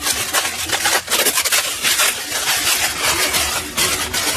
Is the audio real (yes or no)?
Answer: yes